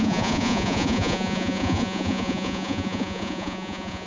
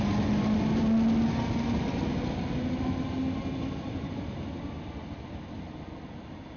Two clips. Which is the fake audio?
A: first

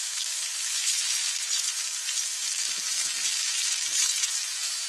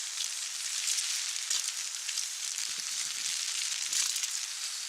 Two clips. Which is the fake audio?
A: first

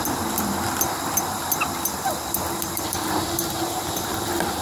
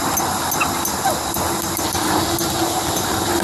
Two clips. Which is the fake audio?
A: first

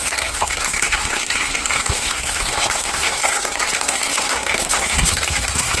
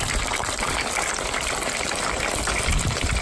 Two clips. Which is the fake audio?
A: first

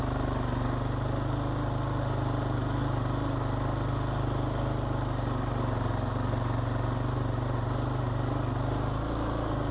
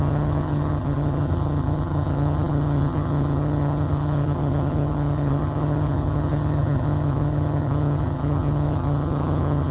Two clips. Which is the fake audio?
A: second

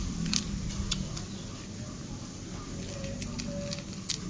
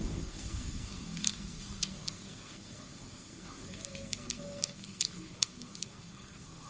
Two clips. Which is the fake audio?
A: second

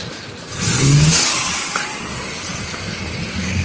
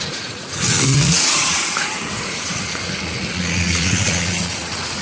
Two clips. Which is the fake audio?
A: second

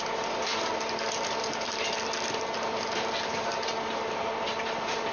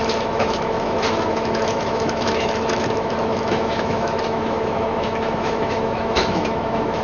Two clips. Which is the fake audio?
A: second